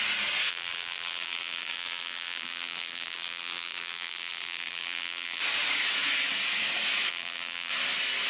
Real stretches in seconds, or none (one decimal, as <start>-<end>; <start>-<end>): 0.0-0.5; 5.4-7.1; 7.7-8.3

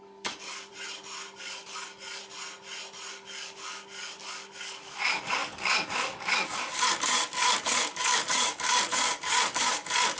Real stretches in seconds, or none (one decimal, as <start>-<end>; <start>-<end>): 0.7-1.4; 2.2-3.1

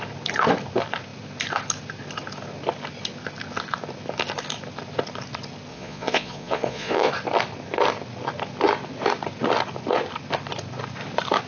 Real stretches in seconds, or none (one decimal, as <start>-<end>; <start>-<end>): 0.0-5.7; 7.1-11.5

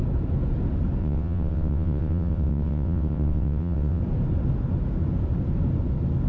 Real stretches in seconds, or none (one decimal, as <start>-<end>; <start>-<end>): 0.0-1.0; 4.0-6.3

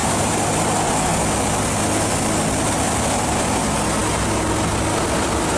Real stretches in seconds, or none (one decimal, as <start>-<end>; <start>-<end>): 0.5-5.6